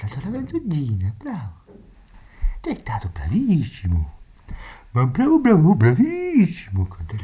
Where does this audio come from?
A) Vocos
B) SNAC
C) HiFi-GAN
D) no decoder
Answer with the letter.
D